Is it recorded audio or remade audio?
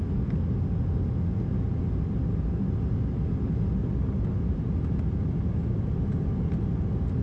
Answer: recorded